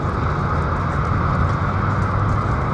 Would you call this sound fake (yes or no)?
no